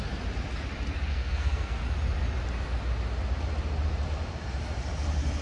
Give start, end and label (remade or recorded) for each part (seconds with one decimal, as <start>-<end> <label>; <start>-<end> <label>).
0.0-1.1 recorded; 1.1-1.8 remade; 1.8-5.4 recorded